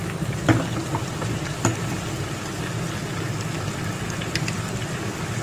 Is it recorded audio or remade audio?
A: recorded